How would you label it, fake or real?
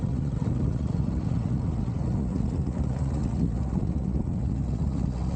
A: fake